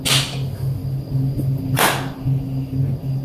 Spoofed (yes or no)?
no